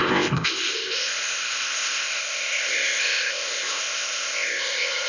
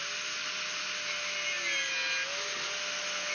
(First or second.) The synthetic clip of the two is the first